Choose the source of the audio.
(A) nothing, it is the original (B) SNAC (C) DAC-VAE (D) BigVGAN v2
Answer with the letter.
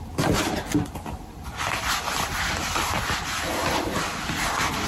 A